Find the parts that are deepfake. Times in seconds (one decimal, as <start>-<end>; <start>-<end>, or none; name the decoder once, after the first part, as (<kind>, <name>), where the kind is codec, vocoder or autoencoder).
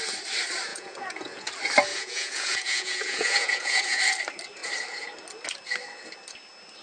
0.7-1.5 (vocoder, Vocos); 1.9-4.0